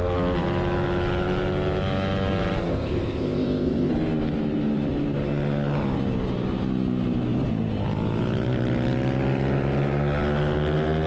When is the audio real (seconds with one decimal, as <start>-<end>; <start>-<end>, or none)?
0.0-2.7; 3.9-11.1